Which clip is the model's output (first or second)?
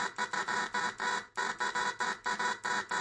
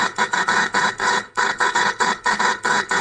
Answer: second